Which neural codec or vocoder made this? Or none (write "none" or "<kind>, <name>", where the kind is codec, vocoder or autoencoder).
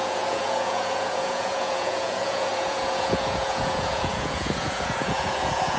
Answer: vocoder, Vocos